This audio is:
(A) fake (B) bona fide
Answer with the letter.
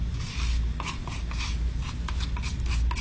B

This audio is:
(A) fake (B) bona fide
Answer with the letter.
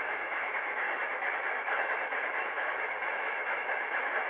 A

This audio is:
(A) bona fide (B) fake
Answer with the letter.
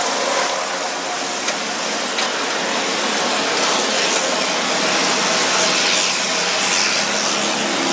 A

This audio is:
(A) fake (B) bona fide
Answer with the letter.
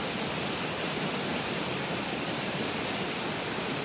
B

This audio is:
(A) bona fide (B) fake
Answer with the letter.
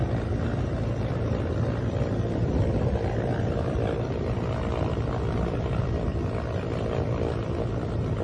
A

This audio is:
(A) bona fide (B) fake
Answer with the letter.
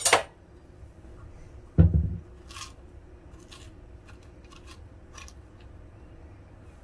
A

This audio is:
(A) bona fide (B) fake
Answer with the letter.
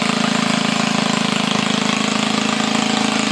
A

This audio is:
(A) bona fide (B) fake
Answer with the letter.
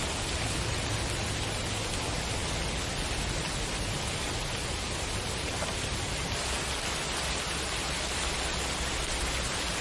A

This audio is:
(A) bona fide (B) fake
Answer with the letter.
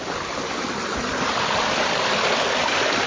A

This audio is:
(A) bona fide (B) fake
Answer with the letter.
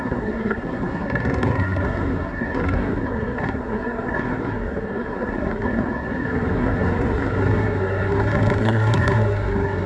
B